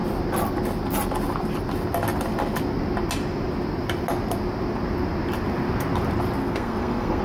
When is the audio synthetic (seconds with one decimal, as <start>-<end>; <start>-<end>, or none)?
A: 6.4-7.2